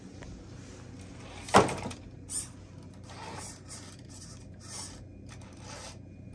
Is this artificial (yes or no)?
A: no